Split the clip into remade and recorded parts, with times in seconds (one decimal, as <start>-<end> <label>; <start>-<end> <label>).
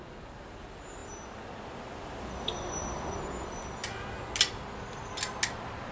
0.0-5.9 recorded